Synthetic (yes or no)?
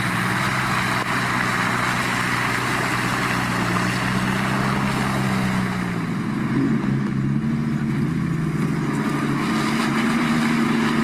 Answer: no